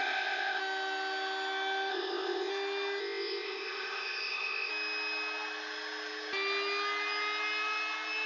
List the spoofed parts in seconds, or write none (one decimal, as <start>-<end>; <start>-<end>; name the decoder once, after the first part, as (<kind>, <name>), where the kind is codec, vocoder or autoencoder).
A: 0.0-0.6 (codec, ZipCodec); 1.9-2.5; 3.0-4.7